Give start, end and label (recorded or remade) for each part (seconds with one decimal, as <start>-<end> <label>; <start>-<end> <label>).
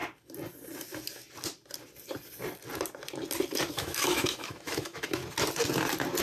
0.0-3.7 recorded; 3.7-5.2 remade; 5.2-6.2 recorded